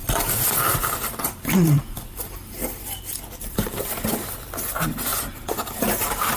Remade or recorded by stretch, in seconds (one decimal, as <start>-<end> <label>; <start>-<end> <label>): 0.0-3.8 remade; 3.8-5.1 recorded; 5.1-6.0 remade; 6.0-6.4 recorded